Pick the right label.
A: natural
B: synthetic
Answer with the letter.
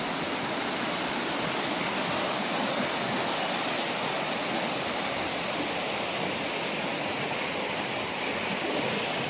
A